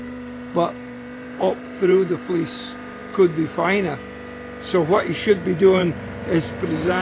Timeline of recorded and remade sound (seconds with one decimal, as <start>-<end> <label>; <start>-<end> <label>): 0.0-3.0 remade; 3.0-5.3 recorded; 5.3-7.0 remade